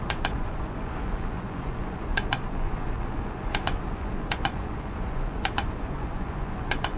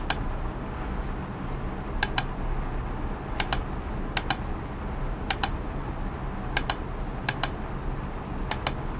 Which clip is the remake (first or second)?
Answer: first